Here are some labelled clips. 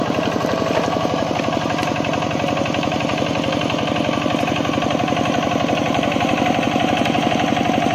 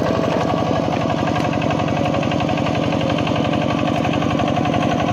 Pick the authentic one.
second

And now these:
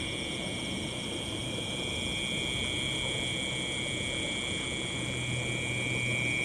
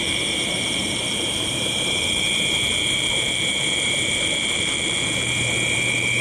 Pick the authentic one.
first